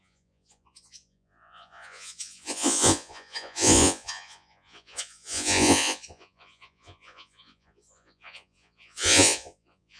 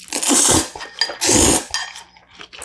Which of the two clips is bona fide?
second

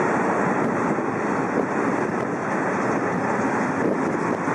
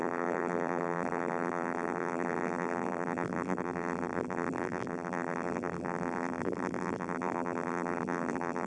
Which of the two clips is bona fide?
first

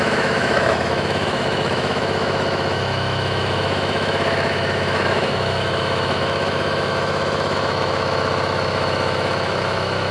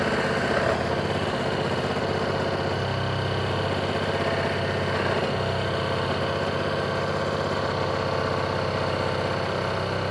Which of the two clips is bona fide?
second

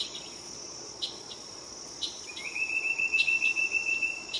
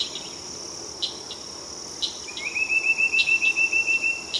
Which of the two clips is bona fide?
second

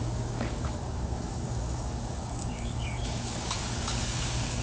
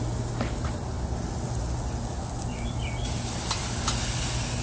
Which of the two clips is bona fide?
second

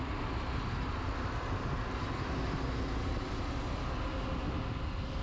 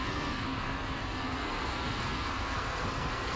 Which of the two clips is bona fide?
first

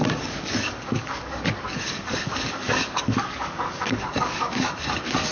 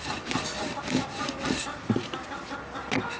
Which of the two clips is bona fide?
second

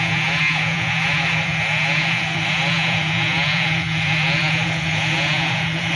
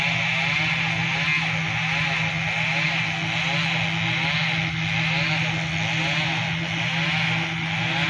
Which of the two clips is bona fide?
second